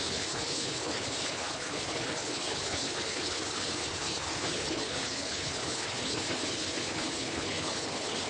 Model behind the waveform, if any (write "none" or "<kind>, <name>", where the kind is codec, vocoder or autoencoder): codec, HILCodec